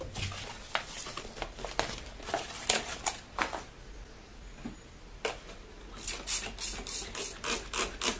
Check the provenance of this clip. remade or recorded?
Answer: recorded